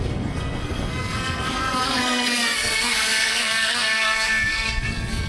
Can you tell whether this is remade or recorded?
remade